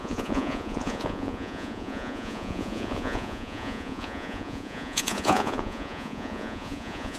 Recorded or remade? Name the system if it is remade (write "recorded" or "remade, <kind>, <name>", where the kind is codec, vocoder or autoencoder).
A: remade, vocoder, Vocos